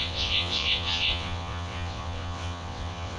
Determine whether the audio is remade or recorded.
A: remade